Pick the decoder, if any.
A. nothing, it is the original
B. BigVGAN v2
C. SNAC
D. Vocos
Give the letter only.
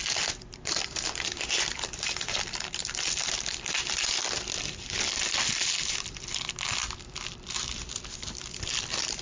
B